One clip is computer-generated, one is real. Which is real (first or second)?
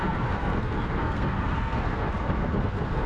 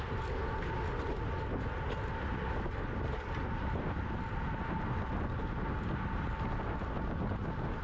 second